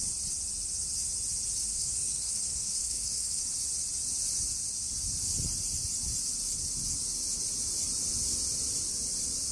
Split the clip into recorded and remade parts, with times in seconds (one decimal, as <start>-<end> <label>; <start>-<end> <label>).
0.0-1.7 recorded; 1.7-3.4 remade; 3.4-9.5 recorded